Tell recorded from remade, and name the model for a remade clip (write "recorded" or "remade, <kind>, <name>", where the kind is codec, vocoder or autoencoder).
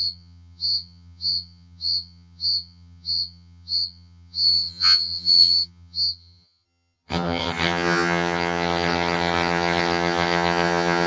remade, vocoder, HiFi-GAN